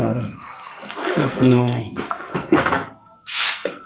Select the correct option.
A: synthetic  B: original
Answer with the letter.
A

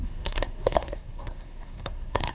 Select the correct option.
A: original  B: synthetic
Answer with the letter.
B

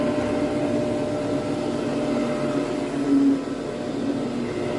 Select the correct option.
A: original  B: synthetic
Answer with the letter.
A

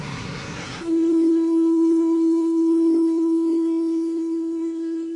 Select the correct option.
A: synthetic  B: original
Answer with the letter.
A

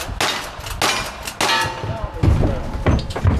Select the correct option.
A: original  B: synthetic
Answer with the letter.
A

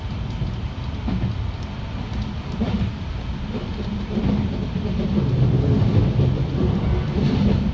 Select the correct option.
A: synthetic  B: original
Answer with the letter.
B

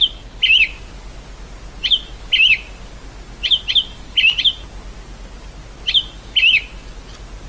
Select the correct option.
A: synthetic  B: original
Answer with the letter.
B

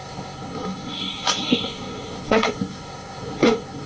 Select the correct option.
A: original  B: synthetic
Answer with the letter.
B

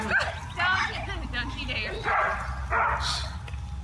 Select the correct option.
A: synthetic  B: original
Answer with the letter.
B